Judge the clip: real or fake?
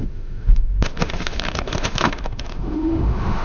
fake